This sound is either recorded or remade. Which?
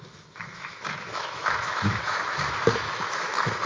remade